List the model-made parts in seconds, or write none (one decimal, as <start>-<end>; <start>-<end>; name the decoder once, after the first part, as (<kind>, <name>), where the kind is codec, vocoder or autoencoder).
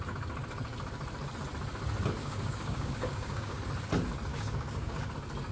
2.2-3.6 (codec, DAC); 4.3-5.1